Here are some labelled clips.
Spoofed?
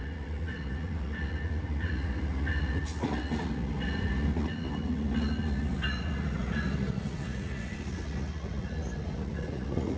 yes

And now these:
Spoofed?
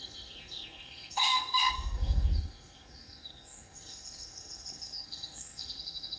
yes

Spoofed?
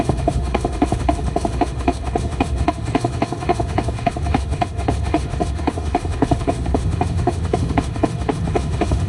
yes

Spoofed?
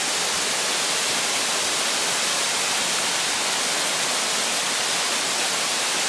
no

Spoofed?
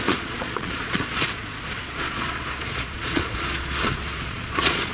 yes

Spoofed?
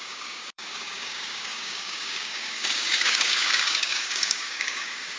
yes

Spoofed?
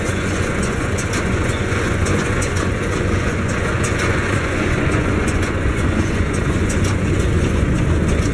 yes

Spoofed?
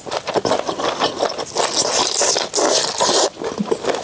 no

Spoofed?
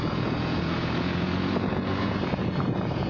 yes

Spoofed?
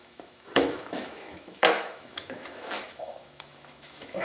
yes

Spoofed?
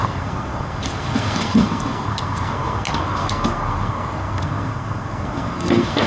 yes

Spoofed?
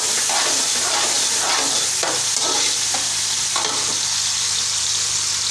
no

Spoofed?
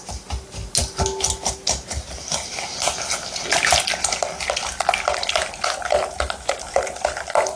no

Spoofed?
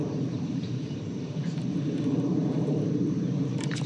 yes